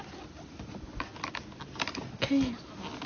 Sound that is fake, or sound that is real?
real